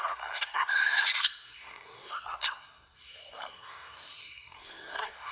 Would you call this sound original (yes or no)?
no